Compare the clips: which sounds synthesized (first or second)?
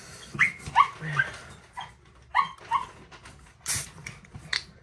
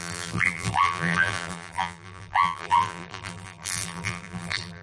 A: second